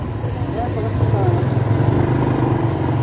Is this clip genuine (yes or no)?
yes